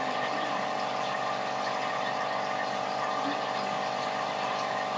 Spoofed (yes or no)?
no